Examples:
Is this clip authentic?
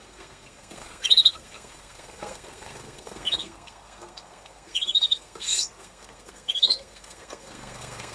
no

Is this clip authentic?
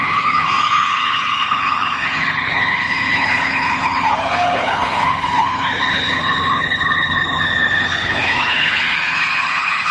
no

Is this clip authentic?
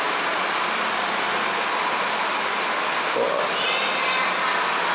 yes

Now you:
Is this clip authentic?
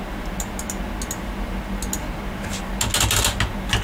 yes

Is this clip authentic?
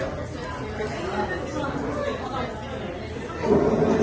yes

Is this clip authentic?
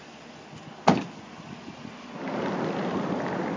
yes